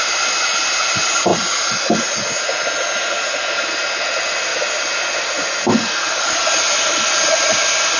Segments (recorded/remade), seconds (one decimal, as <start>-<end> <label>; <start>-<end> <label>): 0.0-8.0 recorded